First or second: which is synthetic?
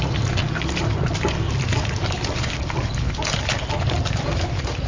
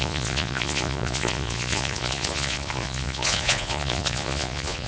second